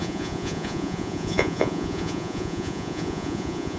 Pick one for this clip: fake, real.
fake